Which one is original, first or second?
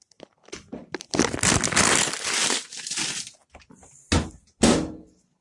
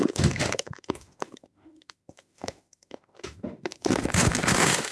first